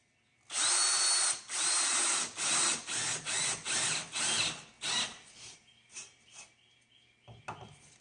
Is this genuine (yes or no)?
yes